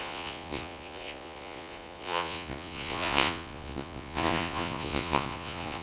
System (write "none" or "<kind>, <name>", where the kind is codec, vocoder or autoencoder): vocoder, Vocos